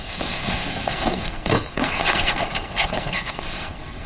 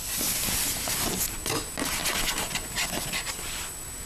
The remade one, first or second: first